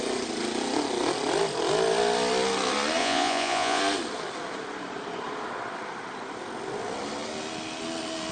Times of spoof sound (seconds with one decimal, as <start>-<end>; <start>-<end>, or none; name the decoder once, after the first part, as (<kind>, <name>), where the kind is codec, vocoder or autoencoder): 3.0-3.8 (vocoder, Vocos)